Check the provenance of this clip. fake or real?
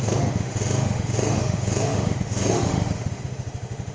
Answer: fake